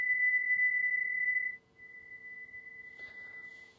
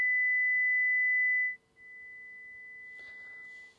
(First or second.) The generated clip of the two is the first